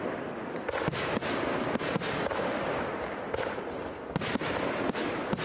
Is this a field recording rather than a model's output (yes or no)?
yes